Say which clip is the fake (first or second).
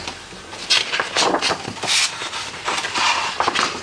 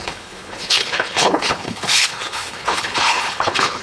second